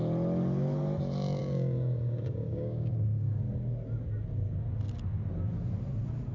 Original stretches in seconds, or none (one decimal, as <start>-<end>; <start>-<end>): 0.0-1.4; 3.4-6.3